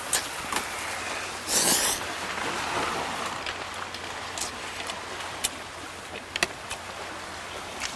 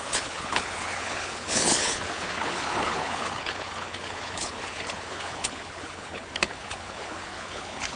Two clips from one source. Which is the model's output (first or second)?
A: second